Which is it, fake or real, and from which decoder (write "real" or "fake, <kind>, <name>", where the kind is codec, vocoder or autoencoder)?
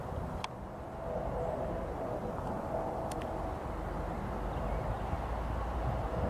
real